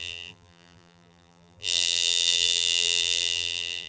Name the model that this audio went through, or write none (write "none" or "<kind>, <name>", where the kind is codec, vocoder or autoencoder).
vocoder, BigVGAN v2